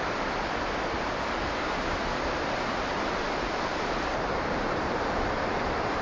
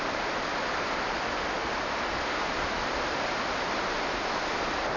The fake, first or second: first